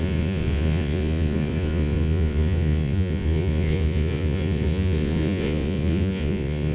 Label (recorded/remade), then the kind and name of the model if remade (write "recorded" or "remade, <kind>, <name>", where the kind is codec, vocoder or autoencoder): remade, vocoder, Vocos